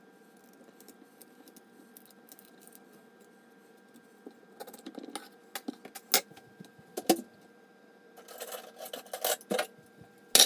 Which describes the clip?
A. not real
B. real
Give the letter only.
B